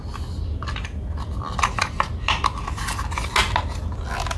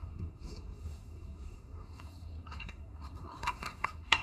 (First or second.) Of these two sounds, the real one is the first